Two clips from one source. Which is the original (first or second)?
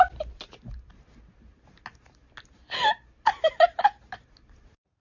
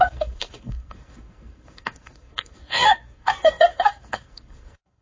first